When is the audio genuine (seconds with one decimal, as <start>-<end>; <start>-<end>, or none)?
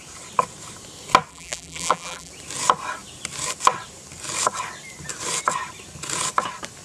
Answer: 0.0-1.3; 2.3-6.8